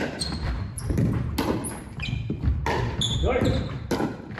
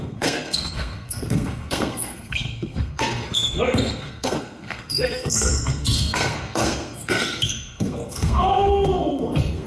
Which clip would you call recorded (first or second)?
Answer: first